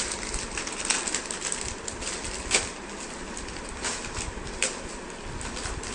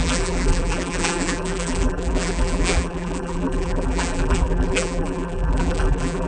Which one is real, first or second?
first